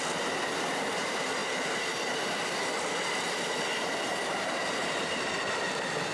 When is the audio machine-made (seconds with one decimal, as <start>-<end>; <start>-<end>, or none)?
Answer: none